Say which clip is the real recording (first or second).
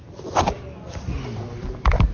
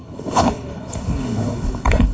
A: first